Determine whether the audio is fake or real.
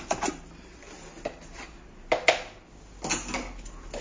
real